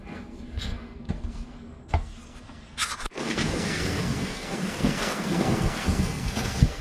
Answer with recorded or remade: remade